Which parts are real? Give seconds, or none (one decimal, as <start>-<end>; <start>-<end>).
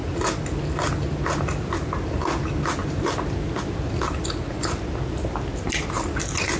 0.0-6.6